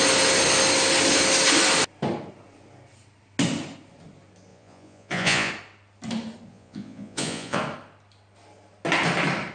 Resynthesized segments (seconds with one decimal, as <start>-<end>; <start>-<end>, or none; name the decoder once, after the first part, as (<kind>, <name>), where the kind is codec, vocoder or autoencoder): 4.5-5.5 (vocoder, Vocos); 6.5-7.6